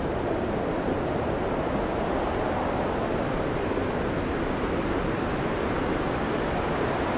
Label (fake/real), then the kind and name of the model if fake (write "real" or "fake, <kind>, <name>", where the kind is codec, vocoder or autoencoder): real